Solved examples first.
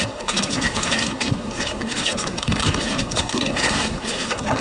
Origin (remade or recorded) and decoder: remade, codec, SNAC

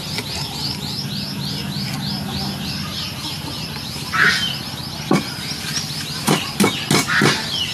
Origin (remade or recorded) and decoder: recorded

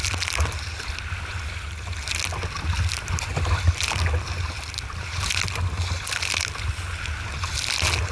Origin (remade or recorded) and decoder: recorded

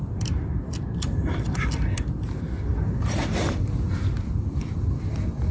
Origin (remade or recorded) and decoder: remade, vocoder, BigVGAN v2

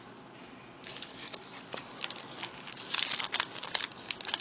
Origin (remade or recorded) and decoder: recorded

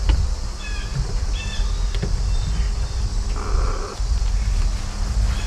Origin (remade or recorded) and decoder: recorded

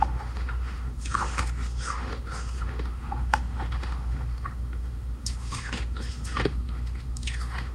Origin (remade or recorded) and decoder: remade, autoencoder, DAC-VAE